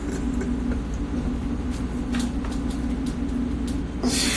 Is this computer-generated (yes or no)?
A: no